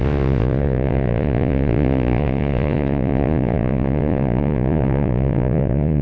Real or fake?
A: fake